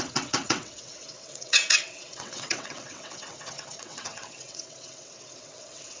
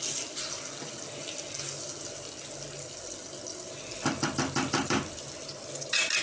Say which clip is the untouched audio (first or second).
second